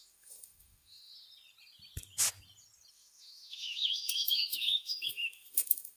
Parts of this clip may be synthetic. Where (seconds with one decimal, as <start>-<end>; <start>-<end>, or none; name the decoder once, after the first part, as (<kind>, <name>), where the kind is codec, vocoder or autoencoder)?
0.0-1.1 (autoencoder, DAC-VAE); 2.9-6.0